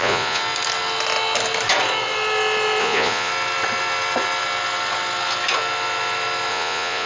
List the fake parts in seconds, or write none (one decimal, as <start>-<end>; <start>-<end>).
0.0-0.4; 2.8-3.3; 6.5-7.1